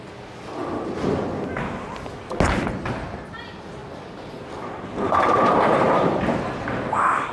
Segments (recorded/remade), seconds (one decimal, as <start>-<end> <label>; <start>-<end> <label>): 0.0-7.3 recorded

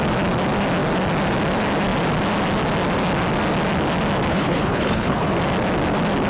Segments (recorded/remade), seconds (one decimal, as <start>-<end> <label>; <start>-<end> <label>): 0.0-4.3 recorded; 4.3-5.3 remade; 5.3-6.3 recorded

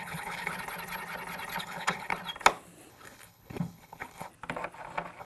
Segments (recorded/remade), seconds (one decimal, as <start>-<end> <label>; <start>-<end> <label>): 0.0-0.5 remade; 0.5-1.6 recorded; 1.6-2.1 remade; 2.1-2.9 recorded; 2.9-4.3 remade; 4.3-5.2 recorded